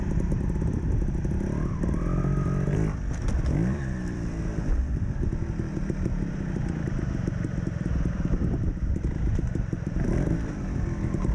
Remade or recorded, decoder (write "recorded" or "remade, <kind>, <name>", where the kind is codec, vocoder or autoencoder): remade, vocoder, BigVGAN v2